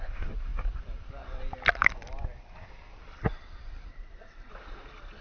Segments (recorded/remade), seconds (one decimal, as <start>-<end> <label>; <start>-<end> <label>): 0.0-3.9 recorded; 3.9-4.5 remade; 4.5-5.2 recorded